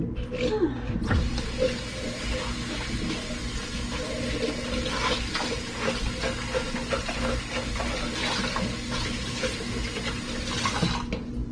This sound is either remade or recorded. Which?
recorded